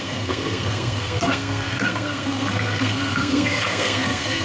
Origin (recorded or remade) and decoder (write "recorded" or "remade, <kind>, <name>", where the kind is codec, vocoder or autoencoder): remade, codec, SNAC